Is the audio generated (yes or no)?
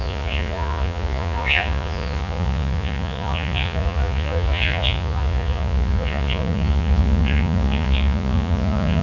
yes